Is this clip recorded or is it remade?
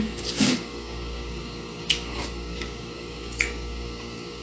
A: remade